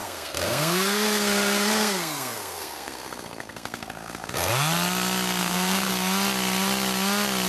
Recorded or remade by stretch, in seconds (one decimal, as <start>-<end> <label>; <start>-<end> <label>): 0.0-4.5 remade; 4.5-5.4 recorded; 5.4-5.9 remade; 5.9-7.5 recorded